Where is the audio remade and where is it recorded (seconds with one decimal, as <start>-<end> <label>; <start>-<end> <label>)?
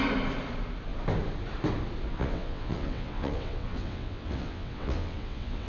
0.0-2.1 recorded; 2.1-5.7 remade